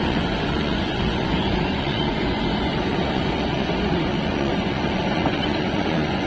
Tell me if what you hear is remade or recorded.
remade